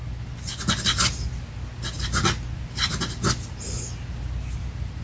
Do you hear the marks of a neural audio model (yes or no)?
no